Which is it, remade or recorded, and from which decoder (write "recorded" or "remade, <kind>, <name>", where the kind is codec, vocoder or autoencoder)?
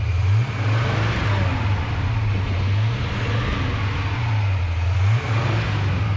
recorded